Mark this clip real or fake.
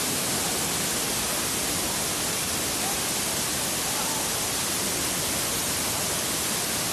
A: real